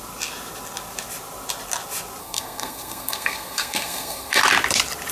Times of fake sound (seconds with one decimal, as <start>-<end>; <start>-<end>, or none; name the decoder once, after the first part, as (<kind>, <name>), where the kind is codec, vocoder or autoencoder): 2.2-4.4 (codec, SNAC)